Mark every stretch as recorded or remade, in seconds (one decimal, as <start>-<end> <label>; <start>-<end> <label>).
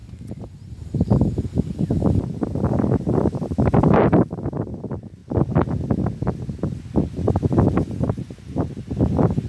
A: 0.0-9.5 recorded